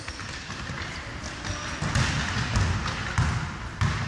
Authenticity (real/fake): real